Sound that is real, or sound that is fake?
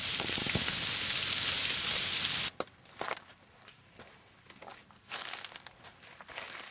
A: real